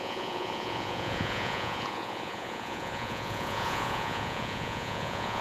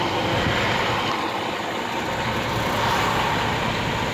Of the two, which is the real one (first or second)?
second